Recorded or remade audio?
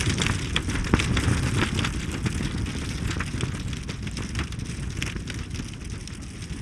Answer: recorded